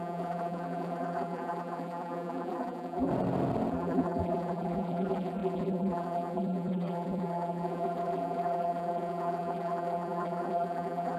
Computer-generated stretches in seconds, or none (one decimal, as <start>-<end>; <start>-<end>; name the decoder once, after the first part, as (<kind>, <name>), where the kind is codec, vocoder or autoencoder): 0.0-3.1 (vocoder, BigVGAN v2); 3.7-11.2